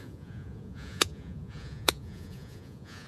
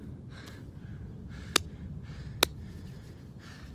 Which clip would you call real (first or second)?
second